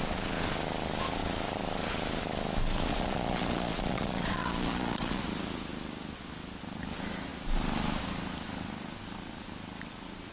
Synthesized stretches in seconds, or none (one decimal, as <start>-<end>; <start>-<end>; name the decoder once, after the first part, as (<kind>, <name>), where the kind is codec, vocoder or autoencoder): 2.9-5.2 (vocoder, Vocos)